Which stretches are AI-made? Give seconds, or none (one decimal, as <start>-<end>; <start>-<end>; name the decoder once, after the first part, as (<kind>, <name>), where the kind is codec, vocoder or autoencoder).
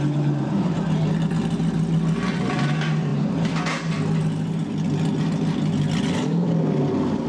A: none